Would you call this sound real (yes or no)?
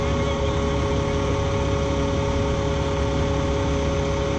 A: yes